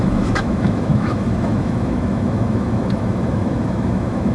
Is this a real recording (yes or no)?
no